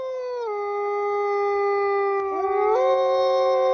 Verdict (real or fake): real